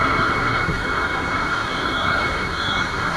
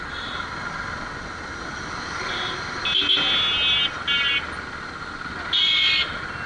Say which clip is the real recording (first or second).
second